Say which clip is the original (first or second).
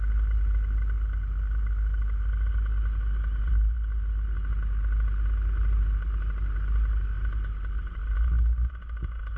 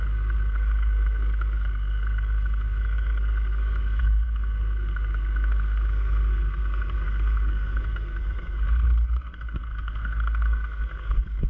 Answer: first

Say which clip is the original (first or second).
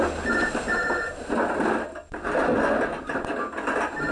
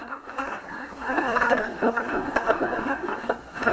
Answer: first